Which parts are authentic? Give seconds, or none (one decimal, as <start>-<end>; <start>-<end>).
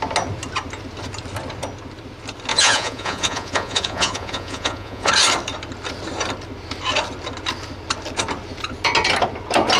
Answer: 0.0-2.5; 5.1-9.8